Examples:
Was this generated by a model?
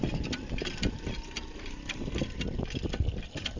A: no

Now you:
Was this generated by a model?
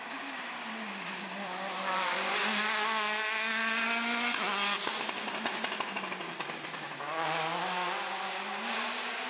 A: no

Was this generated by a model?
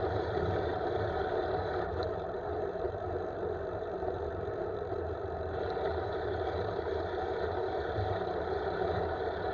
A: yes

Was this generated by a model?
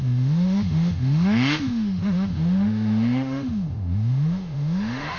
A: yes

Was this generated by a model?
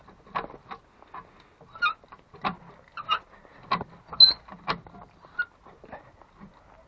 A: no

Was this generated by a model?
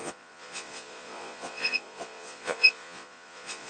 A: yes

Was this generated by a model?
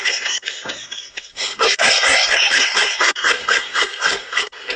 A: yes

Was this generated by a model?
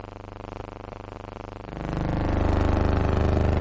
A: no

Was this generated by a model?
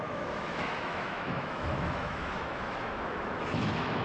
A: yes